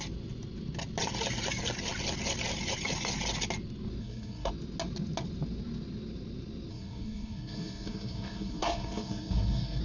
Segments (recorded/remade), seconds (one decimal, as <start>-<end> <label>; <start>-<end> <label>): 0.0-4.0 recorded; 4.0-4.5 remade; 4.5-6.7 recorded; 6.7-9.8 remade

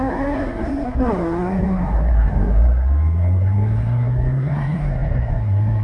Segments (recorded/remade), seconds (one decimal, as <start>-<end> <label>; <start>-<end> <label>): 0.0-5.8 remade

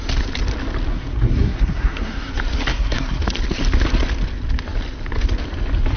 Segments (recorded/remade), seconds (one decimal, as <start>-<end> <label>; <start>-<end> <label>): 0.0-0.9 recorded; 0.9-2.3 remade; 2.3-2.7 recorded; 2.7-3.2 remade; 3.2-6.0 recorded

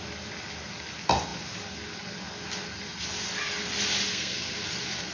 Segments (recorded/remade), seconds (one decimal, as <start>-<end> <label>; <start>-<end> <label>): 0.0-4.1 recorded; 4.1-4.6 remade; 4.6-5.1 recorded

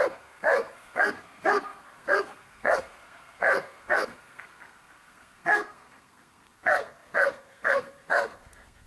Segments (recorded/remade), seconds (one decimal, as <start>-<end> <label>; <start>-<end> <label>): 0.0-8.9 remade